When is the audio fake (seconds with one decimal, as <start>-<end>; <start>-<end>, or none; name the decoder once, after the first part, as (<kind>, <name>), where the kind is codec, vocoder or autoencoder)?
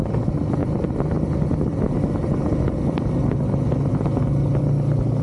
none